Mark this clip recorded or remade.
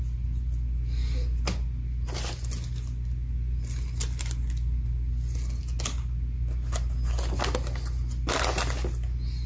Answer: recorded